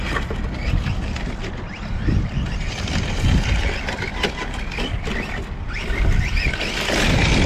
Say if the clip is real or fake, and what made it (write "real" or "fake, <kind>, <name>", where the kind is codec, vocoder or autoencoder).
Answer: real